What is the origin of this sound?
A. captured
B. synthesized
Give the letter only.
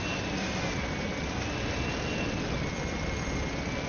A